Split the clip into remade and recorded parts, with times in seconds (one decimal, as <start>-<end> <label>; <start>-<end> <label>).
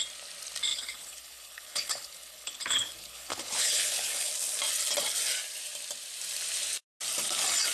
0.0-0.7 recorded; 0.7-4.3 remade; 4.3-7.7 recorded